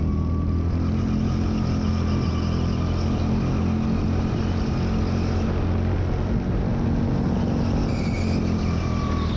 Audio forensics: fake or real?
real